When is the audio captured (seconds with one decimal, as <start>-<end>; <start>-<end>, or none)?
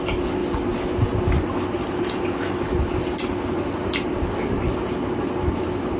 0.0-6.0